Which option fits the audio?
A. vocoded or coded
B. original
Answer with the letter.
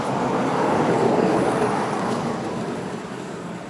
A